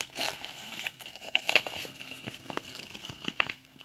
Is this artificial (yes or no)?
yes